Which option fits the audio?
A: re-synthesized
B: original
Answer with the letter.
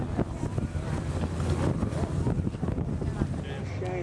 B